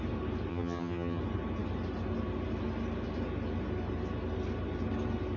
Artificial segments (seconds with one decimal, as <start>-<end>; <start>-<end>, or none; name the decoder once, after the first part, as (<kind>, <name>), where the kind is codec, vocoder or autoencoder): 0.5-1.2 (vocoder, HiFi-GAN)